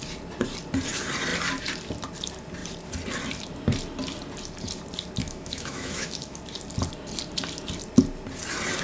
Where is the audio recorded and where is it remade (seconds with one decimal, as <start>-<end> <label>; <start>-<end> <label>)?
0.0-5.2 recorded; 5.2-6.4 remade; 6.4-8.8 recorded